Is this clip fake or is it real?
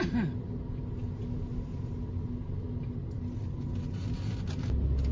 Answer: real